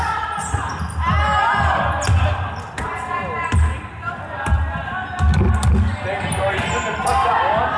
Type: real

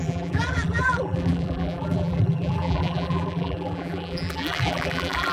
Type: fake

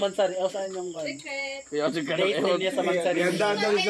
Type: fake